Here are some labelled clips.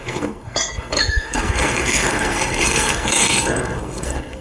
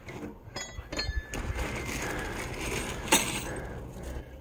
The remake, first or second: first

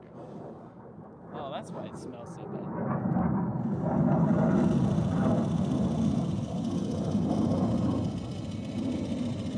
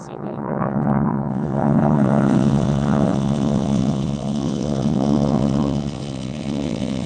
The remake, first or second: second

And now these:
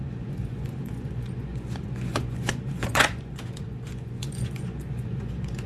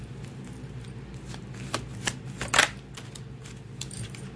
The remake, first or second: first